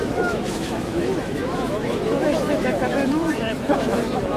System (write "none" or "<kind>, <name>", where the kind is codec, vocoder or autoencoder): autoencoder, DAC-VAE